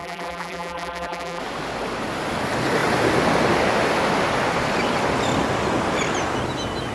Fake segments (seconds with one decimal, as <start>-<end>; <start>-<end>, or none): 0.0-1.4